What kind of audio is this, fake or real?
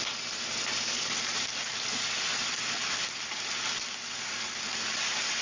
real